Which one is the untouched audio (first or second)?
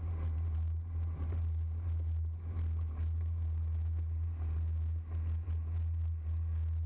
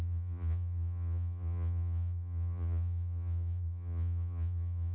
first